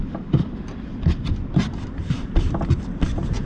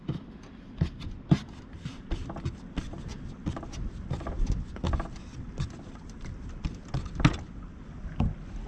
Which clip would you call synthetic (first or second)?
first